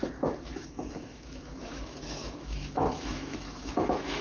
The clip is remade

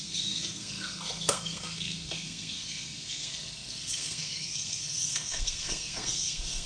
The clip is remade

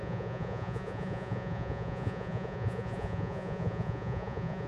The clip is remade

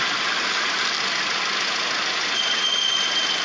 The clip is recorded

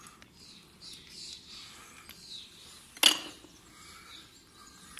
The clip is recorded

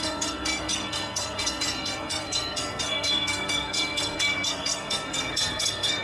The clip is remade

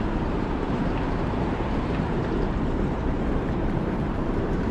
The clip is remade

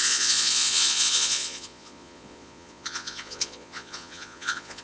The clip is remade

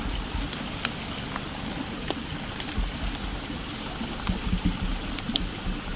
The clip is recorded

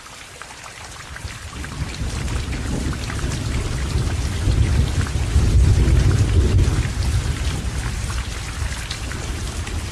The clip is recorded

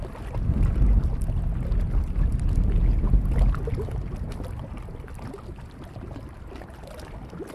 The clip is recorded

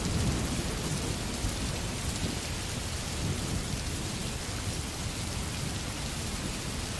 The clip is recorded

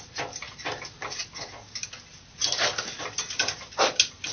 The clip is recorded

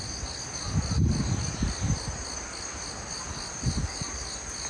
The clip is recorded